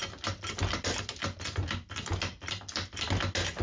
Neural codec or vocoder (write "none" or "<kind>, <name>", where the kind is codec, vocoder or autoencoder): none